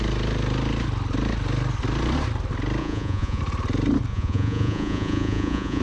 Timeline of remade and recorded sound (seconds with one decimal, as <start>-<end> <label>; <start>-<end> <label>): 0.0-2.8 recorded; 2.8-3.4 remade; 3.4-4.1 recorded; 4.1-5.8 remade